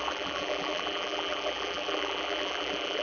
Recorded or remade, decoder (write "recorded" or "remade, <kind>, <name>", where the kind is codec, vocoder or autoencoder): remade, vocoder, BigVGAN v2